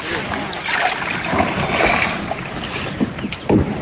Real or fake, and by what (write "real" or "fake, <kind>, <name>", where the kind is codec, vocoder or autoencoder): real